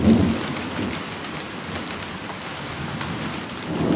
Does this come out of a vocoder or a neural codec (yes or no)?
yes